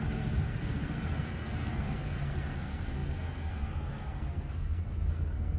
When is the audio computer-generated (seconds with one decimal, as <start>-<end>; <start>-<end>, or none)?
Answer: 0.0-5.6